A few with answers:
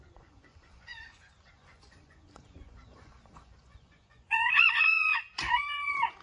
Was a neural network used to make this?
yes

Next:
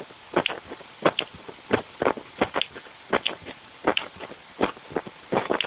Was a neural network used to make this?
no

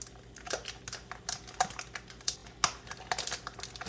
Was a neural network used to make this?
no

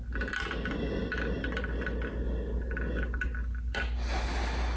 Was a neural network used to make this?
no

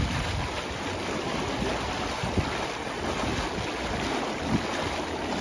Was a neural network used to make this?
no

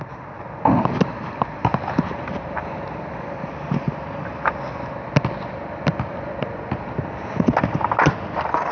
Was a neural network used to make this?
no